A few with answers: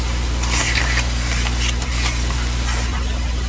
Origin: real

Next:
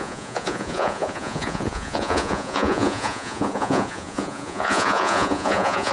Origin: fake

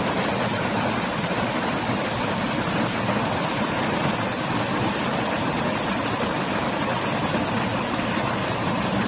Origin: real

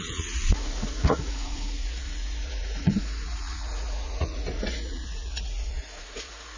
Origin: fake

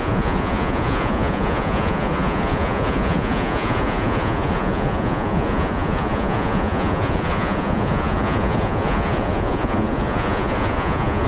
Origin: fake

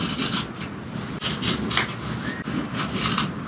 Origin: real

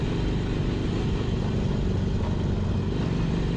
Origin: real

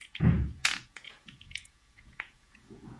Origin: fake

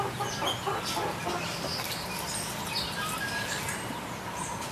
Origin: real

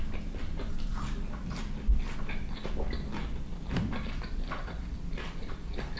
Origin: real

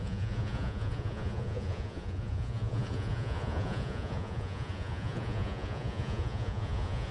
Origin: fake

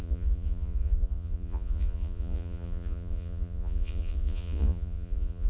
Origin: fake